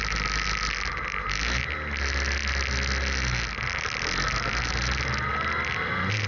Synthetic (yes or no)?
no